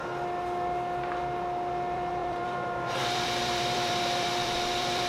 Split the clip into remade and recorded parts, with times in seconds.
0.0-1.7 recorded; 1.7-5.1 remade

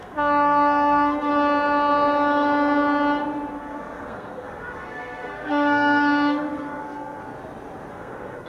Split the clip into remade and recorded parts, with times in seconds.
0.0-1.3 remade; 1.3-3.5 recorded; 3.5-7.2 remade; 7.2-7.9 recorded; 7.9-8.5 remade

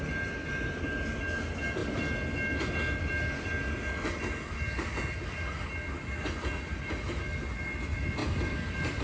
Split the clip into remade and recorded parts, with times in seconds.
0.0-9.0 recorded